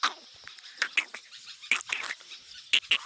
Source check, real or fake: real